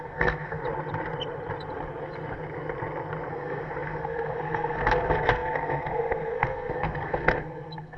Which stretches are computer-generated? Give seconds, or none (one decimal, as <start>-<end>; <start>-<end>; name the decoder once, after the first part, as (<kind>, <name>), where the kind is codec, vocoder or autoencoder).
0.0-0.6 (codec, SNAC); 3.3-8.0